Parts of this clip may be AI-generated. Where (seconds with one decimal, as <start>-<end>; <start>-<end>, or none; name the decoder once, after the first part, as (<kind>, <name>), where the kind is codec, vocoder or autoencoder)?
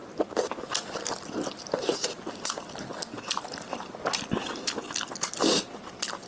1.9-3.4 (vocoder, BigVGAN v2)